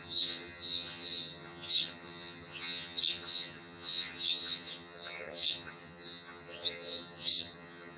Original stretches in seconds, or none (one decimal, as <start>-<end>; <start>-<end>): none